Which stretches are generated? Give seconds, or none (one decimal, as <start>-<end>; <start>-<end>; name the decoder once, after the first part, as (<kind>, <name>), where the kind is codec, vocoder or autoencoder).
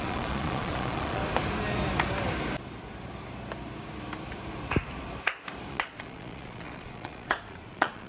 0.0-1.2 (vocoder, Vocos); 5.7-8.1